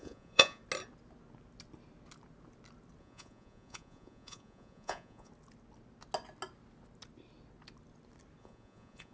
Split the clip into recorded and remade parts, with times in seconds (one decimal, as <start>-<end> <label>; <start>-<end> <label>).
0.0-0.6 remade; 0.6-3.0 recorded; 3.0-5.3 remade; 5.3-8.4 recorded; 8.4-9.1 remade